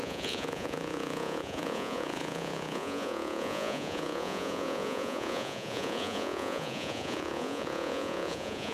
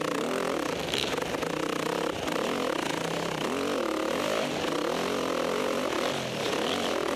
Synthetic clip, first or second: first